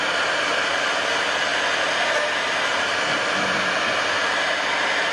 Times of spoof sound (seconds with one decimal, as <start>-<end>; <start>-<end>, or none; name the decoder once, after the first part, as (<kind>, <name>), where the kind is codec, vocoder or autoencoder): none